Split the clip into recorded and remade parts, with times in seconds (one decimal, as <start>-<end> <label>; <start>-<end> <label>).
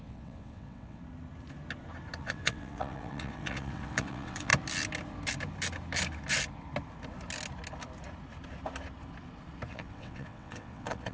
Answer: 0.0-1.0 remade; 1.0-2.2 recorded; 2.2-4.5 remade; 4.5-9.7 recorded; 9.7-11.1 remade